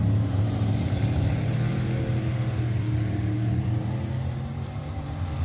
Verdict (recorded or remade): remade